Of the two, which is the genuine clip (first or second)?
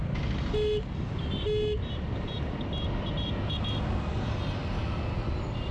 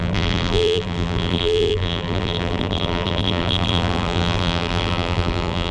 first